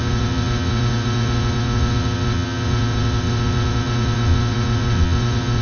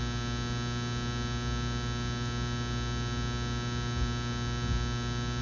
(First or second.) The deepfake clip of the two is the first